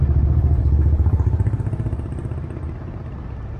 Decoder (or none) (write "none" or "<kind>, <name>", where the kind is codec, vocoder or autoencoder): vocoder, BigVGAN v2